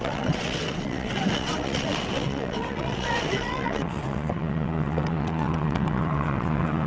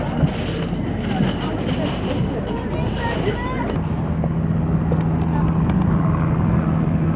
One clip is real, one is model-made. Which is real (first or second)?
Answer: second